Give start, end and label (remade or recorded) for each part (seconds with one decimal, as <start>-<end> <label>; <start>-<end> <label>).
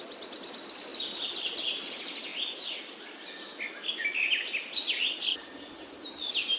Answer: 0.0-6.6 recorded